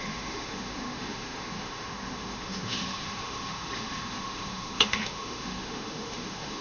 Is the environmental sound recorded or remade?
remade